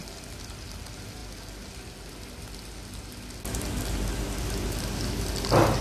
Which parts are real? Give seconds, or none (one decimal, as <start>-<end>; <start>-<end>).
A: 0.0-5.8